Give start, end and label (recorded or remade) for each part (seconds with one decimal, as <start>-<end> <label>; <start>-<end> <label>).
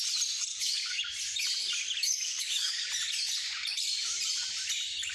0.0-0.5 recorded; 0.5-1.0 remade; 1.0-2.0 recorded; 2.0-2.8 remade; 2.8-5.1 recorded